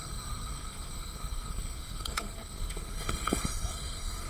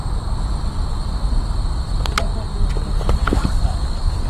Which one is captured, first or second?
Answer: second